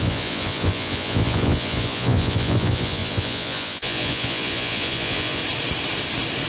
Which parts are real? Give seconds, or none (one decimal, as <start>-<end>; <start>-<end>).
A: 5.4-6.5